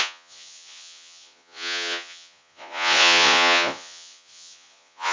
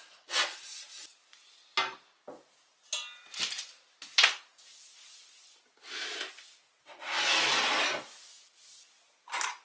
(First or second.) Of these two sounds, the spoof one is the first